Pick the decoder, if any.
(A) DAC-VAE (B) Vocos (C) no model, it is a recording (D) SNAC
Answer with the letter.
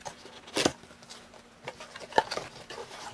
C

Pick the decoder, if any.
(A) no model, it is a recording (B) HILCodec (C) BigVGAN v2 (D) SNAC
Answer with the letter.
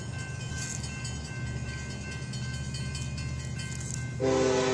A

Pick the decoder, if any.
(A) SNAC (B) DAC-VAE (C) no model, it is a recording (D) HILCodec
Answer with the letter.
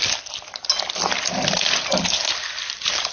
C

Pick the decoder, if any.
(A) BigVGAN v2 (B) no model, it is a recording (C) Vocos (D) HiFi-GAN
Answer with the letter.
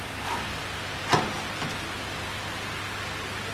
B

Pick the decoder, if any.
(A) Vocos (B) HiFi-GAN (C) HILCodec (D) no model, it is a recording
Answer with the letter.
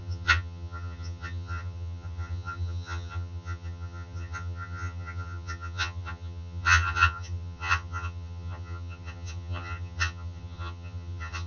B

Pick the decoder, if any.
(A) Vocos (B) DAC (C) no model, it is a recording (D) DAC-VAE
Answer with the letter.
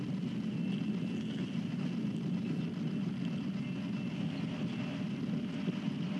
C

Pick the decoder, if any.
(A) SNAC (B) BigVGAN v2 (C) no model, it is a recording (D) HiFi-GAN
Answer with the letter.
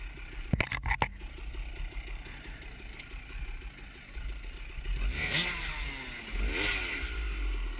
C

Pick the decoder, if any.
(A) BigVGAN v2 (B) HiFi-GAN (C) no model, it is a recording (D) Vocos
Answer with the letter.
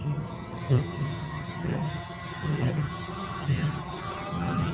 B